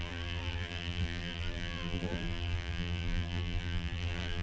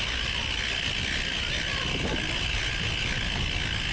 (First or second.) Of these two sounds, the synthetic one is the first